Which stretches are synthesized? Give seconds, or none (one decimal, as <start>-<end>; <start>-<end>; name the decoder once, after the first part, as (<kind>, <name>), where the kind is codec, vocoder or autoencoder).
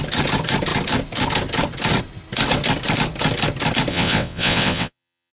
3.9-5.3 (vocoder, WaveNeXt)